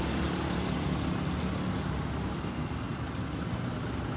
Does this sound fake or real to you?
real